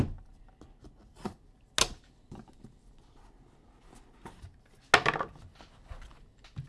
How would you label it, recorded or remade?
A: recorded